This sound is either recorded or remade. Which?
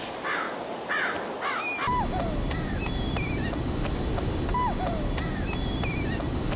recorded